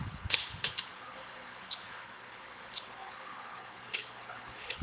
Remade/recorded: remade